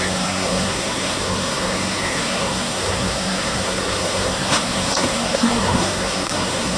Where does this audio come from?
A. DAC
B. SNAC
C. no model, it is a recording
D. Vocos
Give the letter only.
B